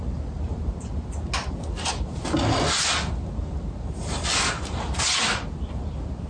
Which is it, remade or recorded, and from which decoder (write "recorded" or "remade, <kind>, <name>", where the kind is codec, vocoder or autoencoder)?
recorded